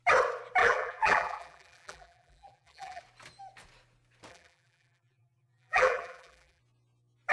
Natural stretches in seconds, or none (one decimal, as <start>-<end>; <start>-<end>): 0.0-0.6; 3.0-4.3; 6.6-7.3